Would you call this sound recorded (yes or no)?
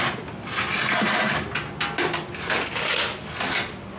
yes